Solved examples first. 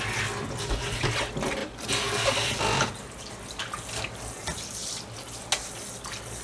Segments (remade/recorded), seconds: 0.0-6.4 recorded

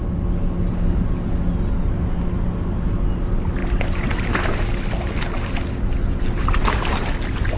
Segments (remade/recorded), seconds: 0.0-7.6 recorded

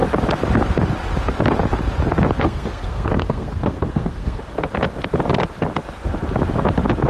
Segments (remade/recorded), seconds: 0.0-2.4 recorded; 2.4-4.4 remade; 4.4-7.1 recorded

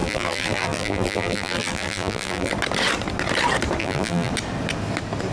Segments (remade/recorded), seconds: 0.0-2.5 remade; 2.5-3.8 recorded; 3.8-4.3 remade; 4.3-5.3 recorded

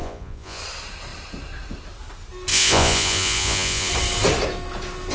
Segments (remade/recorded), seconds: 0.0-0.6 remade; 0.6-2.5 recorded; 2.5-3.9 remade; 3.9-5.1 recorded

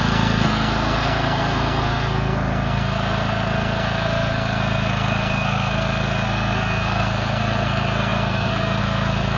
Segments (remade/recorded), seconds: 0.0-9.4 remade

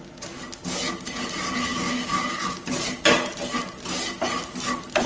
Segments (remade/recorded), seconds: 0.0-1.7 recorded; 1.7-2.7 remade; 2.7-5.1 recorded